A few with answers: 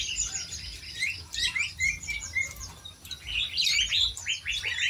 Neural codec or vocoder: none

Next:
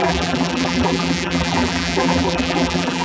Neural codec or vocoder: vocoder, BigVGAN v2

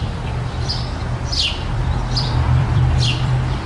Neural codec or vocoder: vocoder, BigVGAN v2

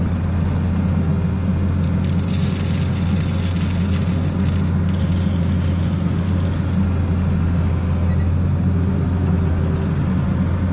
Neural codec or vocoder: none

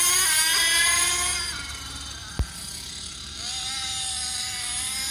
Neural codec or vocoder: none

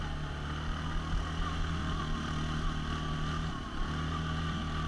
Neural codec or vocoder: none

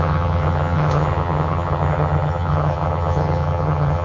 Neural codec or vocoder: vocoder, HiFi-GAN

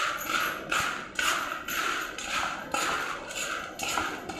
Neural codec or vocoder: none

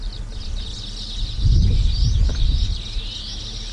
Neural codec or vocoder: none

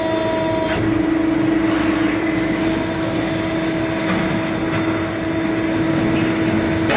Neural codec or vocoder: none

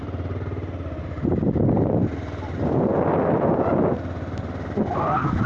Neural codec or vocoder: none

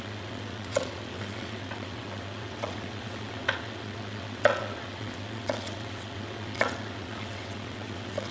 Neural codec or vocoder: vocoder, WaveNeXt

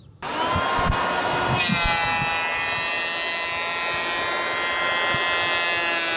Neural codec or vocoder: none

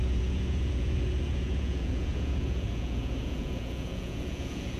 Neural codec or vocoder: vocoder, Vocos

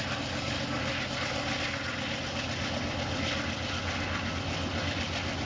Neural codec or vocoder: none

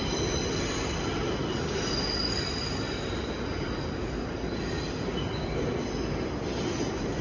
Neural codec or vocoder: none